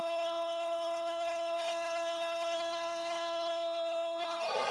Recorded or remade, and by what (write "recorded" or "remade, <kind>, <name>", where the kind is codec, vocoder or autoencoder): remade, codec, SNAC